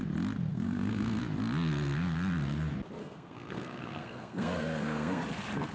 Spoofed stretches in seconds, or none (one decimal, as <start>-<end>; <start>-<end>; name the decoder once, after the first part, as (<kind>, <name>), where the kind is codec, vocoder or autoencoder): 0.5-1.2 (codec, SNAC); 3.0-5.2